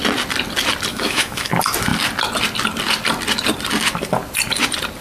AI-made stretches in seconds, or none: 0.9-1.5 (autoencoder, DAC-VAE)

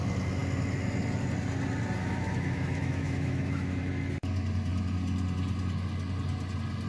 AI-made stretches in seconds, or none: 2.0-3.9 (autoencoder, DAC-VAE)

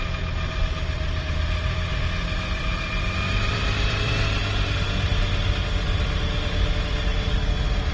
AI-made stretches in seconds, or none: 2.7-4.4 (vocoder, BigVGAN v2)

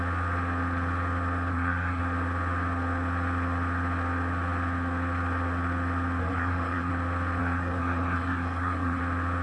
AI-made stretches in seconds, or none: 1.5-2.0 (codec, SNAC); 6.2-6.9; 7.4-9.0

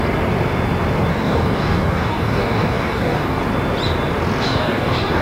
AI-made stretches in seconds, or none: 1.1-3.4 (codec, DAC); 4.4-5.2